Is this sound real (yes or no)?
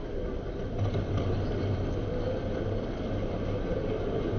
yes